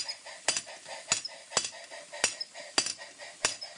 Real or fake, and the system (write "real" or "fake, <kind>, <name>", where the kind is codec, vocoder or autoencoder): real